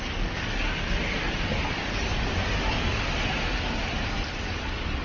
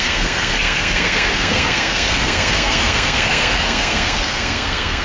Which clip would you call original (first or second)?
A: first